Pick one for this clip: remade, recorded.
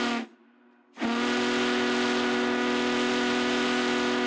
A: recorded